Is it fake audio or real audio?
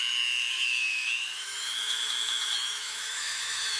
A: fake